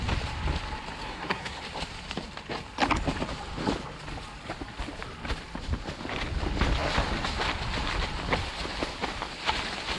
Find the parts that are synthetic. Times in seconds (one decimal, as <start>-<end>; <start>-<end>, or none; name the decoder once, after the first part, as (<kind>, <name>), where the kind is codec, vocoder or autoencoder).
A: 1.0-1.6 (codec, SNAC)

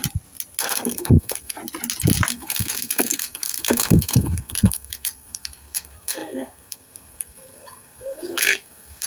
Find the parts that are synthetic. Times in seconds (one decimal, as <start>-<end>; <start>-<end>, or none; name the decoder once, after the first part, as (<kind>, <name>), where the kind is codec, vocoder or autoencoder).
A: 0.6-1.6 (codec, SNAC); 2.3-9.1

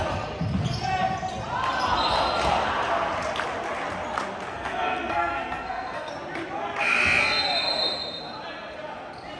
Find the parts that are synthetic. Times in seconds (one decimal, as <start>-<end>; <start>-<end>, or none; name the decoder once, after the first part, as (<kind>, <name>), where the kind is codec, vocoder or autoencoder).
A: 4.5-6.1 (codec, SNAC)

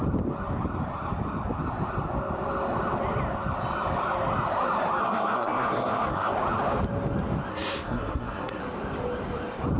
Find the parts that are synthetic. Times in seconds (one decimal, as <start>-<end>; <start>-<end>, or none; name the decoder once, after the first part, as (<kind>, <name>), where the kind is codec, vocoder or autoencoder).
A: 5.0-6.3 (codec, SNAC); 7.5-8.6

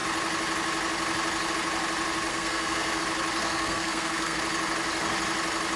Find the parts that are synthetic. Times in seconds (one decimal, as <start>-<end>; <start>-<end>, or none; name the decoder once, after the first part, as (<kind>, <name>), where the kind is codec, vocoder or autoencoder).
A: 2.3-3.0 (codec, SNAC); 3.4-4.4